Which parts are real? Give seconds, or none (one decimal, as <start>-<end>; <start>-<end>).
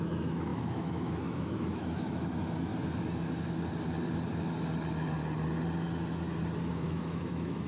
2.7-6.7